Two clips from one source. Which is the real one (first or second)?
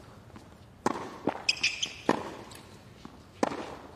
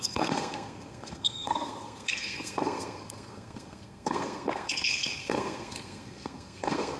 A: first